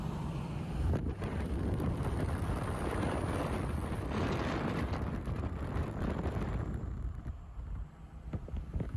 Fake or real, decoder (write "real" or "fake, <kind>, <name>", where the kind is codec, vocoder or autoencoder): fake, vocoder, BigVGAN v2